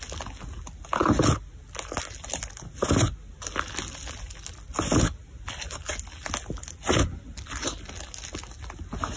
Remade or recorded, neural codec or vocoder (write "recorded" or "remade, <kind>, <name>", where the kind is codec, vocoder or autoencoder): recorded